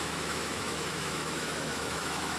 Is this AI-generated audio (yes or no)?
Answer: yes